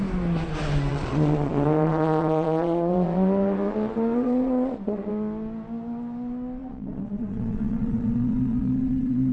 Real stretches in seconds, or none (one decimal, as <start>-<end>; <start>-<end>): 0.0-0.9; 5.1-6.6